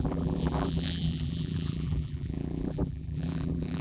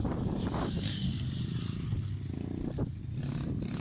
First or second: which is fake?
first